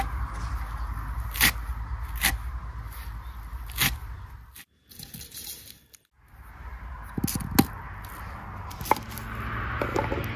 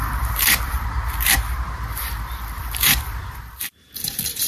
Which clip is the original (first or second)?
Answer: first